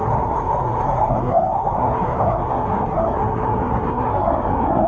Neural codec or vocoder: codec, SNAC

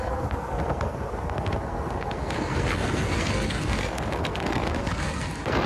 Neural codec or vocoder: codec, SNAC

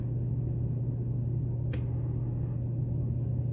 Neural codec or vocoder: none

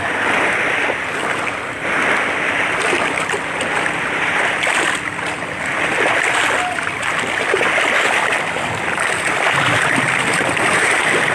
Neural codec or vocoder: none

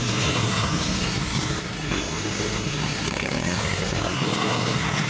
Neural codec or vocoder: codec, SNAC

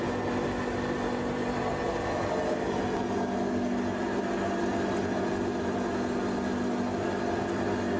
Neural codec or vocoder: none